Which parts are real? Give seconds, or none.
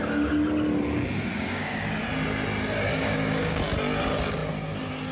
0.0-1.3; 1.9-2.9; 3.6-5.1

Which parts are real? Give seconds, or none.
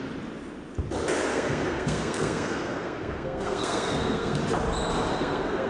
0.0-1.3; 4.4-5.1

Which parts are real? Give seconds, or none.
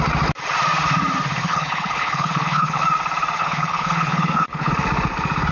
0.0-1.4; 2.8-3.4; 4.7-5.5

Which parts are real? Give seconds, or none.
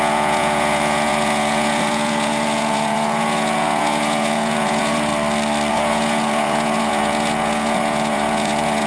5.1-5.7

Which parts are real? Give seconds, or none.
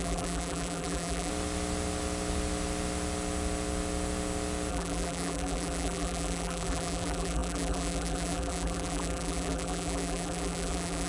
1.3-4.7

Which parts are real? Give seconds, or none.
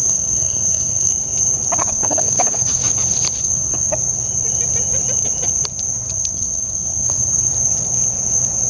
1.1-1.8; 2.8-3.4; 3.9-6.1; 7.5-8.7